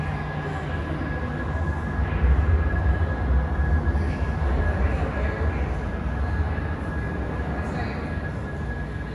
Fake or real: real